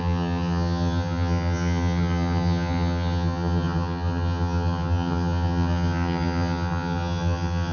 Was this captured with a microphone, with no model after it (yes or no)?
no